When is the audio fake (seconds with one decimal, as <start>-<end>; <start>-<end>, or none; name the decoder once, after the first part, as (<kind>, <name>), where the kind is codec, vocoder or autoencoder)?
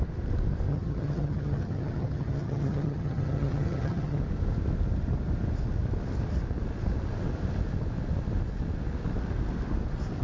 0.7-4.2 (vocoder, HiFi-GAN)